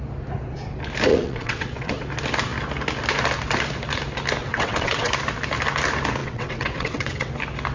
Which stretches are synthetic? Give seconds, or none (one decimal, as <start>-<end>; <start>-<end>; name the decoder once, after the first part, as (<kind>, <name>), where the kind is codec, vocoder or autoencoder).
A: 1.1-1.9 (vocoder, WaveNeXt); 4.4-5.1; 6.2-7.3